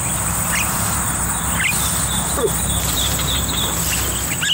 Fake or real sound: real